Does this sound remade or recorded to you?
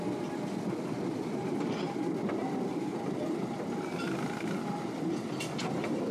recorded